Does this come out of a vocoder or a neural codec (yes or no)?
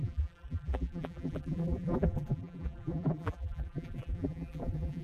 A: yes